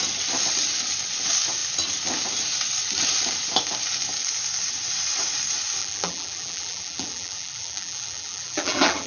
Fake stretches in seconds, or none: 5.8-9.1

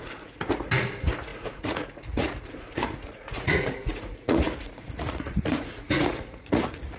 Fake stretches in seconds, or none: 0.0-7.0

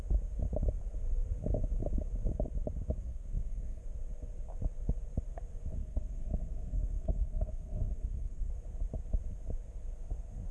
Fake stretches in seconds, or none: 3.0-3.8; 5.8-8.5

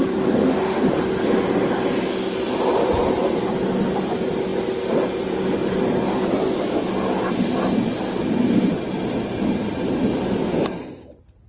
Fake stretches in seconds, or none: 0.4-1.0

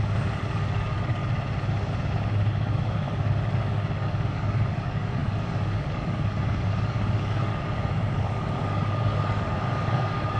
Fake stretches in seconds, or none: 0.0-1.2; 2.5-10.4

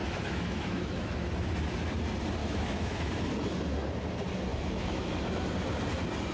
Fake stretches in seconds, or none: 0.0-1.1; 2.4-3.1; 4.5-5.1

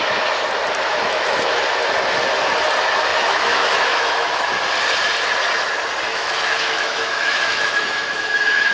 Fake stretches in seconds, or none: 0.9-1.6; 3.1-4.3; 6.1-8.7

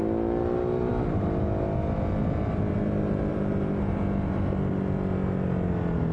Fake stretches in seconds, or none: 3.3-4.0